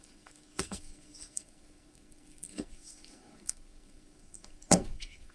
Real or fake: fake